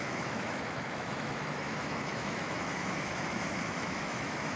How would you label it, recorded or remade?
remade